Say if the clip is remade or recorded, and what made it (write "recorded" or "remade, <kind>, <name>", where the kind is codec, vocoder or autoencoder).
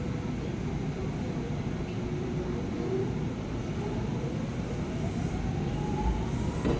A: recorded